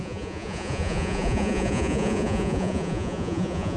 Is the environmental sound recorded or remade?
remade